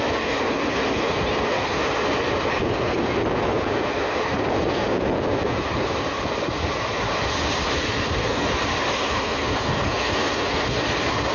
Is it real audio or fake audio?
real